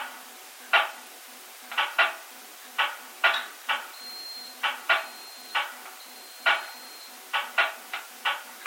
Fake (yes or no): yes